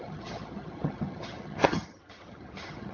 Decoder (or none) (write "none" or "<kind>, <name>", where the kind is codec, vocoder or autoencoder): vocoder, HiFi-GAN